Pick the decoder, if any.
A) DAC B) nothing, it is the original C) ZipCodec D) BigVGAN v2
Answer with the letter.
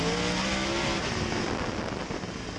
B